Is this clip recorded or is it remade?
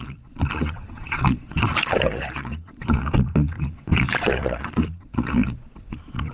remade